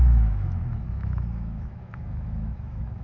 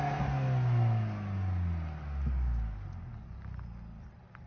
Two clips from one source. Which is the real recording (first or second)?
second